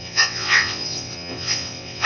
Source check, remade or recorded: remade